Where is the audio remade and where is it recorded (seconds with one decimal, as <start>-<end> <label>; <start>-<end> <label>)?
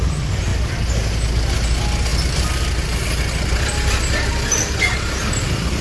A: 0.0-5.8 recorded